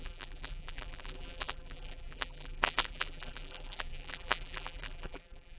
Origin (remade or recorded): remade